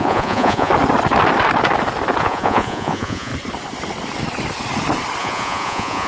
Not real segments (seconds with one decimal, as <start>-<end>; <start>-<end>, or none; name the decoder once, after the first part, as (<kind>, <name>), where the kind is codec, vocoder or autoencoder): 0.0-0.7 (vocoder, Vocos); 2.2-3.3; 5.2-6.1